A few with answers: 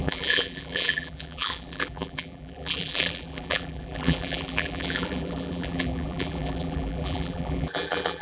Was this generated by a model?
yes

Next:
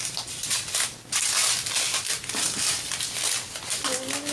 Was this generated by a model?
no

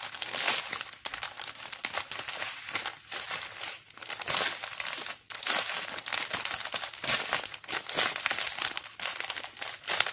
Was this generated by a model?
no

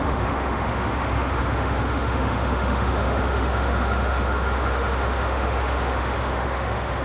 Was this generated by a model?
yes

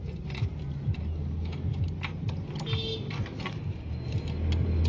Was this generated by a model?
no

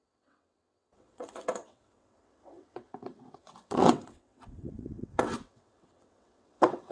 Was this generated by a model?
yes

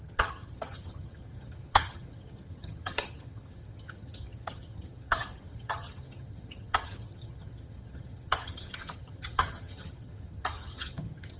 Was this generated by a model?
yes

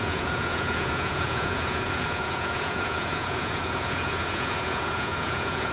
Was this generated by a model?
yes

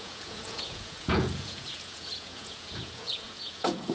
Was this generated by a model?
yes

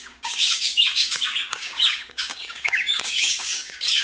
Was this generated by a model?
yes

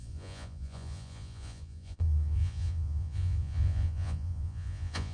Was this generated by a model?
yes